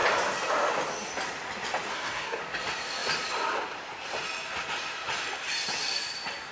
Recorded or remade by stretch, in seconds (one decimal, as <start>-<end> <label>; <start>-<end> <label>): 0.0-1.9 recorded; 1.9-2.4 remade; 2.4-6.5 recorded